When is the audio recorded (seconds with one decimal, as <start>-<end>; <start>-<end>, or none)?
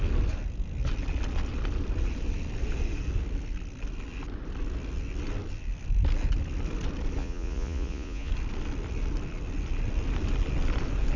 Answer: 0.0-7.2; 8.3-11.2